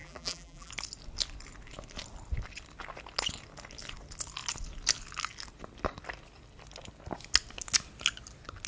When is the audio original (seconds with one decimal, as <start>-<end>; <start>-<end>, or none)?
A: 0.7-8.7